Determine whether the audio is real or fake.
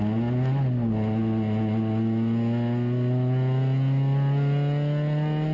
real